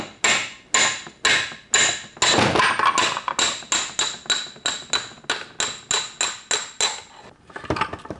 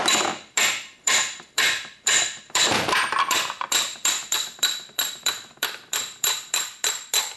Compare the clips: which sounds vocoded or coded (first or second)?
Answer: second